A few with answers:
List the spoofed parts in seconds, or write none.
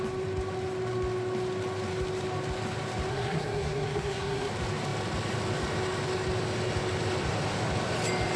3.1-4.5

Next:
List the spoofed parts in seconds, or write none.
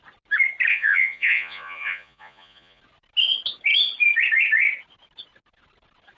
0.7-2.8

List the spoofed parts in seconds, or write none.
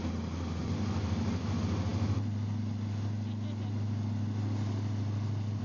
none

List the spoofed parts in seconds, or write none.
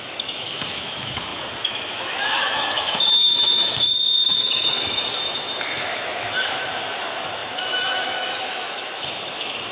0.0-9.7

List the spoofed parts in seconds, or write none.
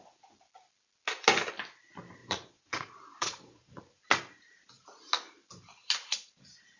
2.2-3.8